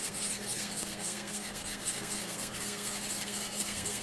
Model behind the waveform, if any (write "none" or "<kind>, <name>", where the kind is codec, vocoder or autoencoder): codec, SNAC